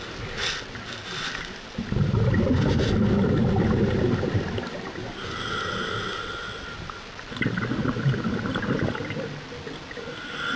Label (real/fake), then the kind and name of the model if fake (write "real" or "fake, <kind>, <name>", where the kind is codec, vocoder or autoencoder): real